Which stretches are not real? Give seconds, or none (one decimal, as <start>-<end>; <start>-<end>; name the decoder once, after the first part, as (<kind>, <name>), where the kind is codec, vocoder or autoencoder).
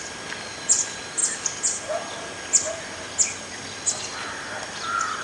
none